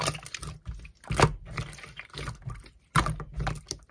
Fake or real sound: real